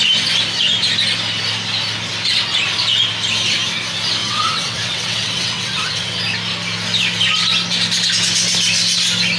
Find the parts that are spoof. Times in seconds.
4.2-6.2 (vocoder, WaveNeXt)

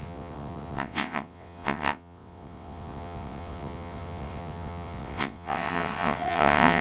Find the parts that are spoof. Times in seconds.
0.0-6.8 (vocoder, WaveNeXt)

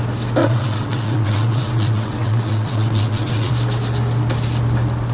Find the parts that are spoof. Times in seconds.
0.4-3.5 (vocoder, WaveNeXt)

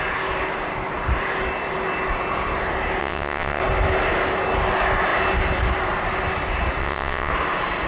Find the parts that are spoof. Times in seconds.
3.0-3.6 (vocoder, WaveNeXt); 6.8-7.3

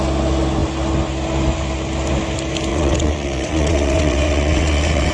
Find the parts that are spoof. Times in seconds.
2.7-5.1 (vocoder, WaveNeXt)

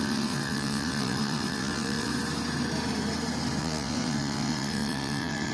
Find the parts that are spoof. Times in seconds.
0.0-2.1 (vocoder, WaveNeXt); 3.6-5.5

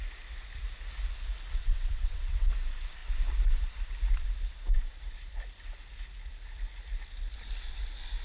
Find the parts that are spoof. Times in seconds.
1.6-2.5 (vocoder, WaveNeXt)

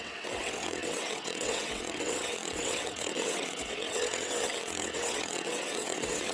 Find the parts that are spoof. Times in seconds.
0.0-6.3 (vocoder, WaveNeXt)